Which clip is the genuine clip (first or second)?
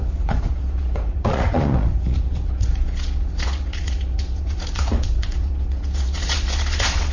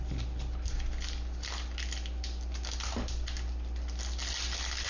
second